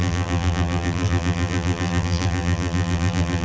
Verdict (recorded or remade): remade